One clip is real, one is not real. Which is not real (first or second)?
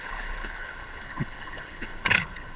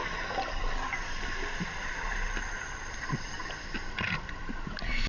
first